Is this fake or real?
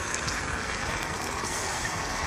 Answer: fake